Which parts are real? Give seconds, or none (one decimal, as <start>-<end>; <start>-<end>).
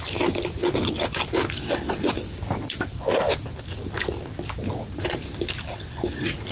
0.0-6.5